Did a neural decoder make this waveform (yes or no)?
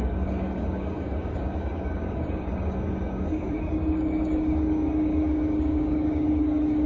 yes